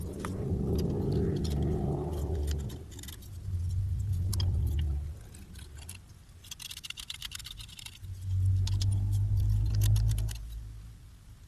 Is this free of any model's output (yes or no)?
yes